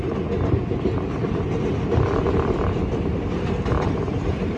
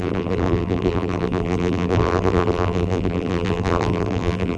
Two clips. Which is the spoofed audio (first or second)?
second